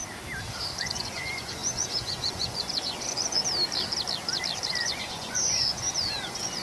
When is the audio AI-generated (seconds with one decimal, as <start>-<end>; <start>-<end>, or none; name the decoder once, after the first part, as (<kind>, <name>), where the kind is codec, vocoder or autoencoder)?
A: 0.8-3.4 (vocoder, Vocos); 4.8-6.6